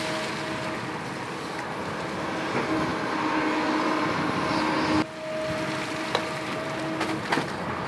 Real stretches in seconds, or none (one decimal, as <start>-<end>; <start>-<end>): 0.0-7.9